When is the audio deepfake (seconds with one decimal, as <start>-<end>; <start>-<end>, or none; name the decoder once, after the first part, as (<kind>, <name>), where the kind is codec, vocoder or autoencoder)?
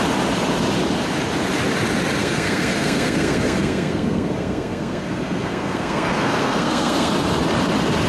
2.2-7.1 (codec, SNAC)